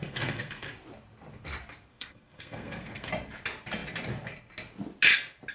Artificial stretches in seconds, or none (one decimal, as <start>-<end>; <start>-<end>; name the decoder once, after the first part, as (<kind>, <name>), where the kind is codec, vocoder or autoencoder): 0.0-0.7 (codec, SNAC); 1.9-3.1